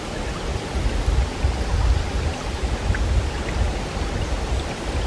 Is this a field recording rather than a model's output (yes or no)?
yes